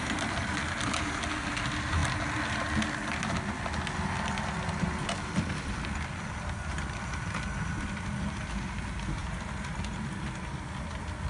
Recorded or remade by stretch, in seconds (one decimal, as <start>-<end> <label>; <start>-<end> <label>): 0.0-2.0 remade; 2.0-4.8 recorded; 4.8-11.3 remade